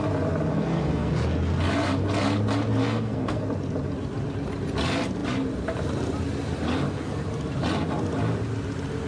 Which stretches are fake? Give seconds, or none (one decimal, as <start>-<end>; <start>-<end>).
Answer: 0.5-1.1; 2.8-3.4